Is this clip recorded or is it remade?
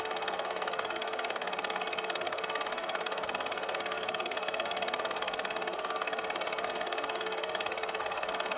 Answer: remade